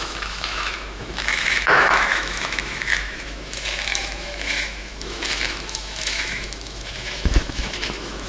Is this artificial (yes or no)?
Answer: yes